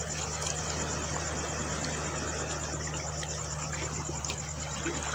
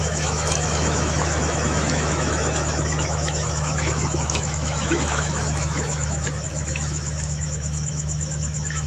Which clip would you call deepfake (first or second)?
second